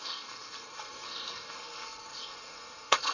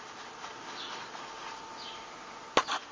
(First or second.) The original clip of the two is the second